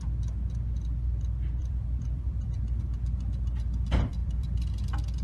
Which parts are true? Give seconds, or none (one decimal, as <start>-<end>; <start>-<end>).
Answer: 0.0-1.6; 2.8-4.2; 4.7-5.2